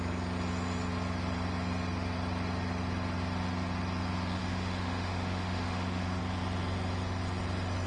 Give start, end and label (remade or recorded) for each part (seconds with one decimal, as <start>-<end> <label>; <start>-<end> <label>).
0.0-4.4 recorded; 4.4-6.2 remade; 6.2-7.9 recorded